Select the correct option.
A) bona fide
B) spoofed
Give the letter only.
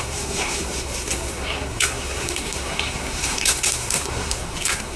B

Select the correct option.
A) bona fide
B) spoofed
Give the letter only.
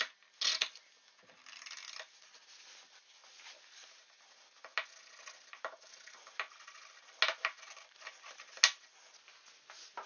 A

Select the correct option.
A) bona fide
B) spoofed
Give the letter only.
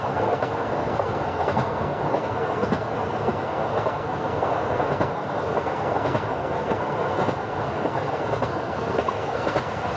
B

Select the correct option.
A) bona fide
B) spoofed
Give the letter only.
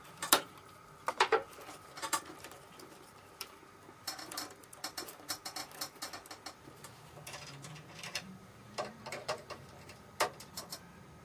B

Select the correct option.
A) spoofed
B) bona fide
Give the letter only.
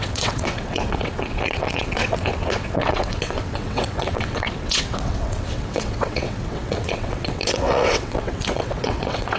A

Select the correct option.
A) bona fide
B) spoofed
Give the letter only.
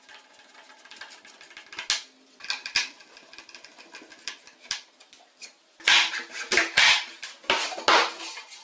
A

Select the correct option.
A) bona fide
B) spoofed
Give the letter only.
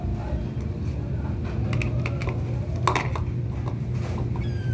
A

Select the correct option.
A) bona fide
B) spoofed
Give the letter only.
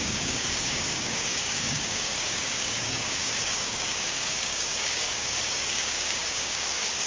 B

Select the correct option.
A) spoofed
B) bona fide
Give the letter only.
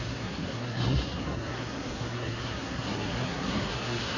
A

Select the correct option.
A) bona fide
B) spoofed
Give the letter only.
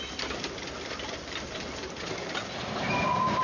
A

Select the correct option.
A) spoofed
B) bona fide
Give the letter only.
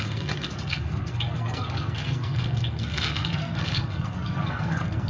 A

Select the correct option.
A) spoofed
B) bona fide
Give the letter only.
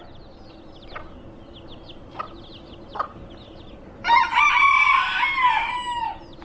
B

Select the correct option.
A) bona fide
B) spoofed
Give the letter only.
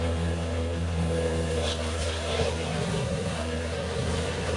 B